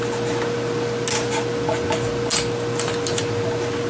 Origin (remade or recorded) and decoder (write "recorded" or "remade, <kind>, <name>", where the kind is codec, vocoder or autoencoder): recorded